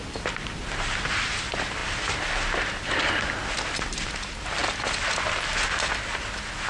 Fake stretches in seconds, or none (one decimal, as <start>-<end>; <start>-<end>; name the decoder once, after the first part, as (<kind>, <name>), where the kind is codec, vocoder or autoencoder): 0.0-1.8 (vocoder, BigVGAN v2); 3.8-4.6